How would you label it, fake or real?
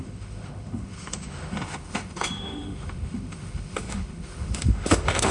fake